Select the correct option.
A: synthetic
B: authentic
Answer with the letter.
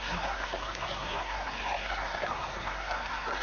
A